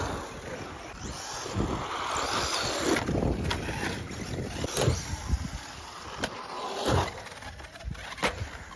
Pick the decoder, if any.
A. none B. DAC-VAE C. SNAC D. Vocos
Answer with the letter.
A